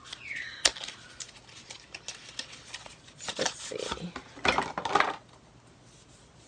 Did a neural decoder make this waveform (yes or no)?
no